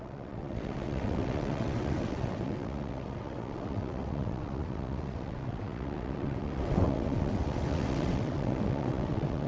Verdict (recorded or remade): remade